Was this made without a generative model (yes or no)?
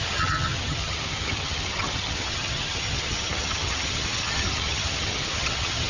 no